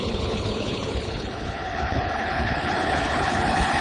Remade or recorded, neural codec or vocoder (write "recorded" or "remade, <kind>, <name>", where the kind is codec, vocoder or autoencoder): remade, codec, HILCodec